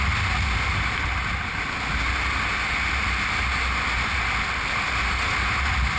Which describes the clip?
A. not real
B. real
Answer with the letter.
B